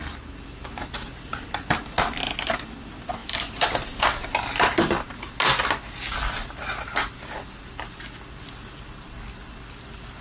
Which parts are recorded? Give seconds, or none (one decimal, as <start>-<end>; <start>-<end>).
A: 0.0-3.2; 4.0-6.4; 7.9-10.2